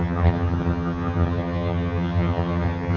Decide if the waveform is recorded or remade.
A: remade